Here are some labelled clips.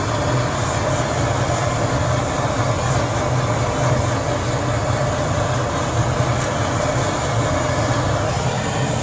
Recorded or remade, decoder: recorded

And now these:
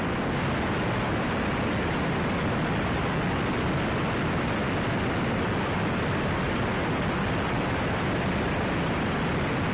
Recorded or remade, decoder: recorded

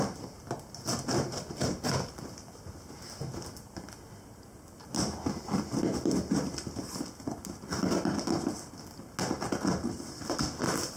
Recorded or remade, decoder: recorded